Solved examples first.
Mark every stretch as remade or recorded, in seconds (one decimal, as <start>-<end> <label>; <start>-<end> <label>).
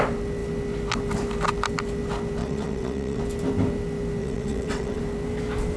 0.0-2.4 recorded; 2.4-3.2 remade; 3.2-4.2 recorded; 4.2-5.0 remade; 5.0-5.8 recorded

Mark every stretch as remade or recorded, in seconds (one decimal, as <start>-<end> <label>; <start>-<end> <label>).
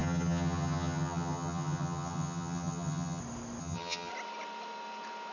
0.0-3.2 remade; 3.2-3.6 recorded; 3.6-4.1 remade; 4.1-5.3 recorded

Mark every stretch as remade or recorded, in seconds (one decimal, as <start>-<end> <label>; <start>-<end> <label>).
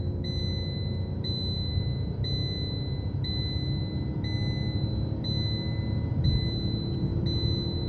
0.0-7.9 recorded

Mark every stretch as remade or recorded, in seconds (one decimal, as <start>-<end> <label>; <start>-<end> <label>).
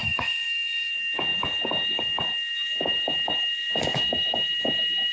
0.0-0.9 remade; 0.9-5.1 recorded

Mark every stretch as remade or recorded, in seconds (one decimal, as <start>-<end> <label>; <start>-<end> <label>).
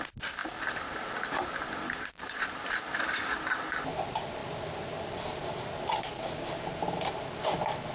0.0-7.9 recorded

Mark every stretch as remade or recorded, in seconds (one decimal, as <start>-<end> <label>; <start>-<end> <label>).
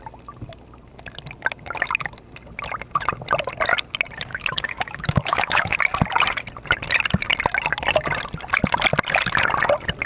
0.0-4.3 recorded; 4.3-5.8 remade; 5.8-10.1 recorded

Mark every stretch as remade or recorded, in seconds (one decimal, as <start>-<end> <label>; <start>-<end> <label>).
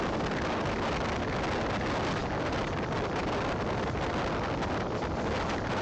0.0-5.8 recorded